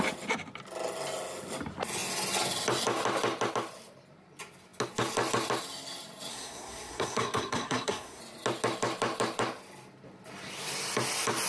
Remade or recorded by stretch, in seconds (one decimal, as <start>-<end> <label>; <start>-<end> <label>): 0.0-6.3 recorded; 6.3-8.2 remade; 8.2-11.5 recorded